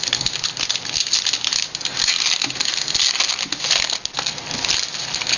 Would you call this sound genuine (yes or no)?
yes